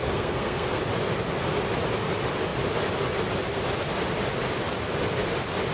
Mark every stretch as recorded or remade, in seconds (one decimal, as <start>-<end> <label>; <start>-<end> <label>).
0.0-0.8 remade; 0.8-5.7 recorded